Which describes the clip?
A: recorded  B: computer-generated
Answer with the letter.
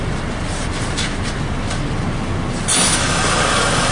A